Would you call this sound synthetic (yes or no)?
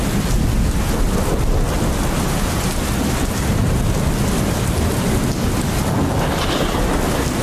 no